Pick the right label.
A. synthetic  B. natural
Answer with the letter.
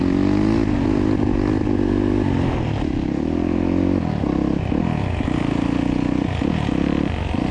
B